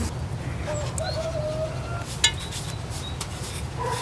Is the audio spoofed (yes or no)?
no